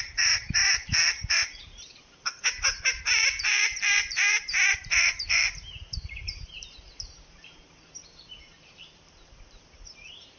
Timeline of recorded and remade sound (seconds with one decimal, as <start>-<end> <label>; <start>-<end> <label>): 0.0-10.4 remade

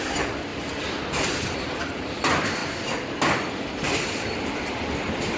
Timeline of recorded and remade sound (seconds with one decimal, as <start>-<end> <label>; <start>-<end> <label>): 0.0-2.6 remade; 2.6-5.4 recorded